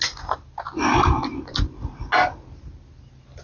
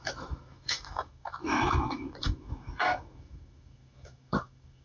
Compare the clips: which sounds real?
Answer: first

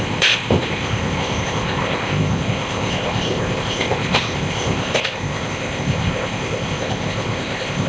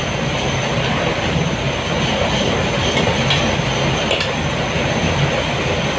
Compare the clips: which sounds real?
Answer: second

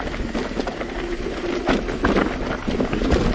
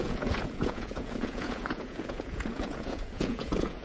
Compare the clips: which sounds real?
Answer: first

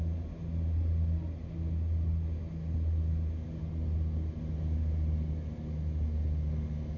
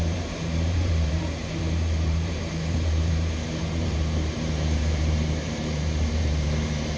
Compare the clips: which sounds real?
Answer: first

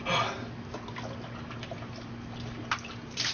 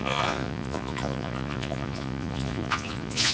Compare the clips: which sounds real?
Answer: first